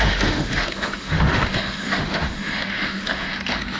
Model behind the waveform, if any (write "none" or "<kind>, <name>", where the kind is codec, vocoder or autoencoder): autoencoder, DAC-VAE